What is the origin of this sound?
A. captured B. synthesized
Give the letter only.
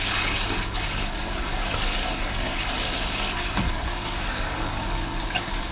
B